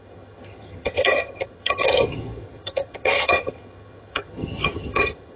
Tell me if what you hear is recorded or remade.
remade